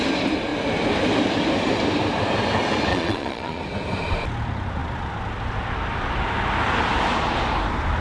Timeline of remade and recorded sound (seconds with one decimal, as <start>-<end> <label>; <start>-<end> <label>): 0.0-2.9 recorded; 2.9-3.6 remade; 3.6-8.0 recorded